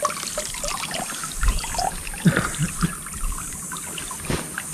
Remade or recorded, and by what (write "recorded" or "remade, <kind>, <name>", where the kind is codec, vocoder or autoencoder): recorded